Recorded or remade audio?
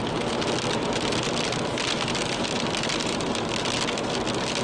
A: recorded